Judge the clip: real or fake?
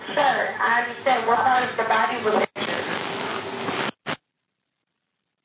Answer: real